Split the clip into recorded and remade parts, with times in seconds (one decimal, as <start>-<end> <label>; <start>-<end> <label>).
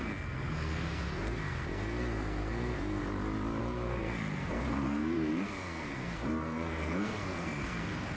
0.0-3.0 remade; 3.0-3.6 recorded; 3.6-8.2 remade